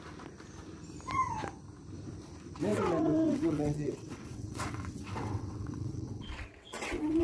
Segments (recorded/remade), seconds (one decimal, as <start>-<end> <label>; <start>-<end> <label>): 0.0-2.7 recorded; 2.7-7.2 remade